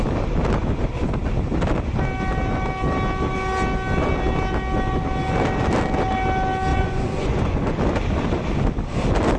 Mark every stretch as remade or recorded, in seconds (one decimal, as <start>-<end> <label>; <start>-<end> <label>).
0.0-6.7 recorded; 6.7-7.8 remade; 7.8-9.4 recorded